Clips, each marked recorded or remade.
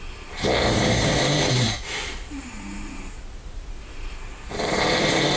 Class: remade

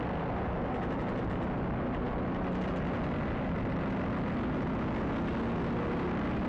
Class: recorded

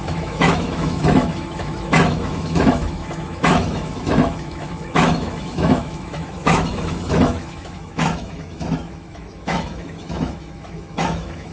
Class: remade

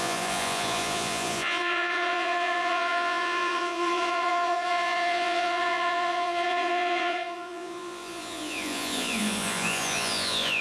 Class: remade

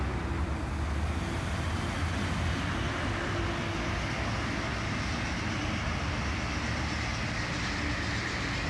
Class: recorded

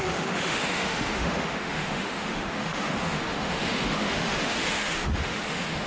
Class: remade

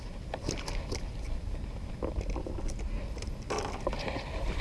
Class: recorded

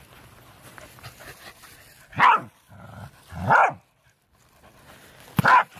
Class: recorded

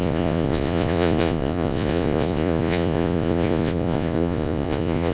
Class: remade